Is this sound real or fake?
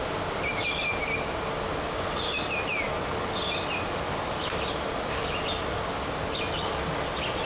real